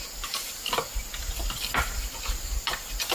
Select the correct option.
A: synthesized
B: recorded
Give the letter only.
B